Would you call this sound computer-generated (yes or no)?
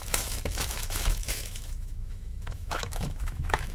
yes